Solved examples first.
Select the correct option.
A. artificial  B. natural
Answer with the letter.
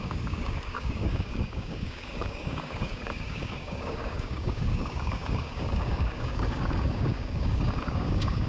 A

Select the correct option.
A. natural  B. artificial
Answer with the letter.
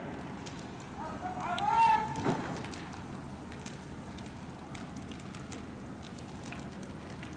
A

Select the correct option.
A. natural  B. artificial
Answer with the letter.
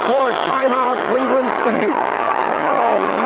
B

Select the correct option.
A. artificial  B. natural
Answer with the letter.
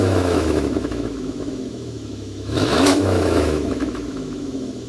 A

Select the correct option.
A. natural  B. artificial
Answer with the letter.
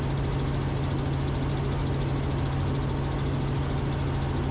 A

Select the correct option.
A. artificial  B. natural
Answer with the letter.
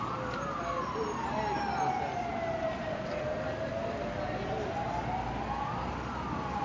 B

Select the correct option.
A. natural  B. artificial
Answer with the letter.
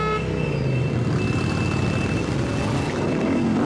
A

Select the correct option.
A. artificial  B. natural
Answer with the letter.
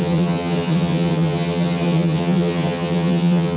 A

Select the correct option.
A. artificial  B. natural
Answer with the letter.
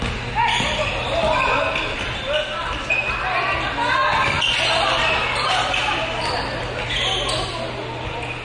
B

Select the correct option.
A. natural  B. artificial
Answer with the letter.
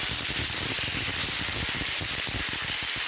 A